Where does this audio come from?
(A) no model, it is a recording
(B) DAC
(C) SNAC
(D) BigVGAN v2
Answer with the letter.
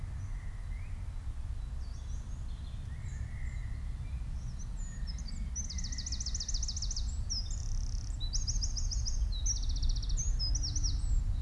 A